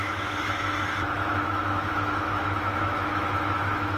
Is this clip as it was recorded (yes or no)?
no